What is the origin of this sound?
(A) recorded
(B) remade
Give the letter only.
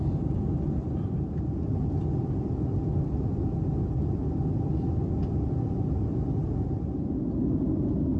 A